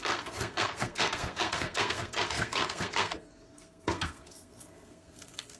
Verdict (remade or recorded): remade